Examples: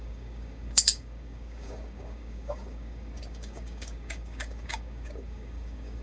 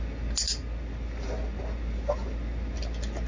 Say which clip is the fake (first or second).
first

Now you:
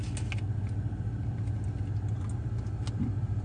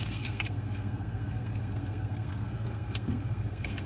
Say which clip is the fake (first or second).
second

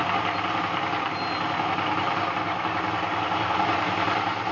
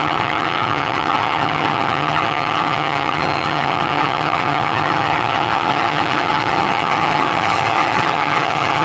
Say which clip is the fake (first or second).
second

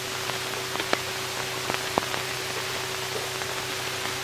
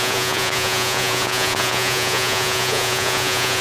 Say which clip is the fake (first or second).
second